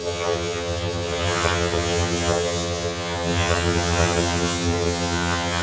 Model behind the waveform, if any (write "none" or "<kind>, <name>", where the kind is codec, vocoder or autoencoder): vocoder, HiFi-GAN